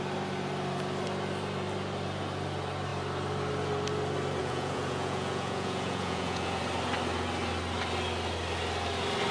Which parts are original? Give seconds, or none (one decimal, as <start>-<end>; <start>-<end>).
0.0-4.4; 6.6-9.3